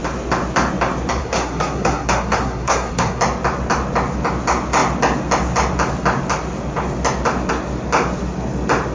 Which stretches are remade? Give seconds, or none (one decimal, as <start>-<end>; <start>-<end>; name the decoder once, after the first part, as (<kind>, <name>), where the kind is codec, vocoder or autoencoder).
1.2-3.2 (codec, SNAC)